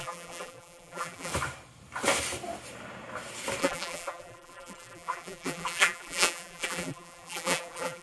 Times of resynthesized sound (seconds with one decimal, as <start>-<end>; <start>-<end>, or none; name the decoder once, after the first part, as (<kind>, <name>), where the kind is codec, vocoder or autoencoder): 0.0-1.3 (vocoder, BigVGAN v2); 3.6-8.0